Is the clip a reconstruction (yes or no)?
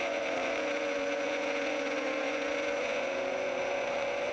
yes